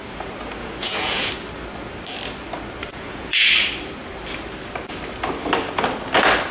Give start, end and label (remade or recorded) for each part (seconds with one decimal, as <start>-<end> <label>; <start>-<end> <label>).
0.0-0.6 recorded; 0.6-1.3 remade; 1.3-2.9 recorded; 2.9-3.5 remade; 3.5-6.5 recorded